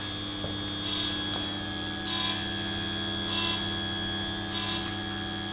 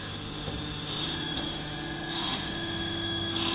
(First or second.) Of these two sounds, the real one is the first